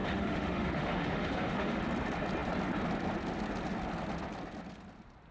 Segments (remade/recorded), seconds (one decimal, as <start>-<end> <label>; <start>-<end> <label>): 0.0-1.8 remade; 1.8-5.3 recorded